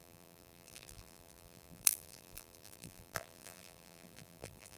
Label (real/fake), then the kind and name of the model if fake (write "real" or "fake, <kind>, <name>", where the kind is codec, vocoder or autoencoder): fake, vocoder, BigVGAN v2